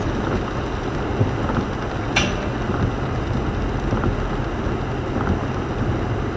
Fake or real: real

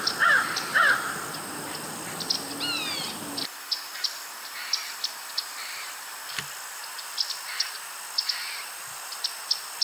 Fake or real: real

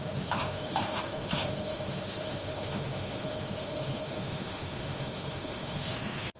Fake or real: fake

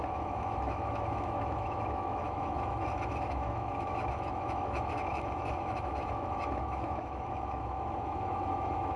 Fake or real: fake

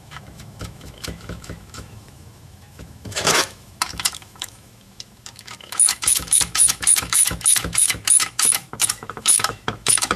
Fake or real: fake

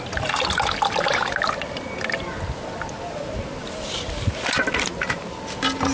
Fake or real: real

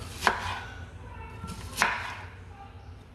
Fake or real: real